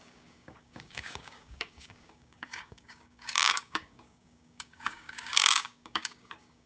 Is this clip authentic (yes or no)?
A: no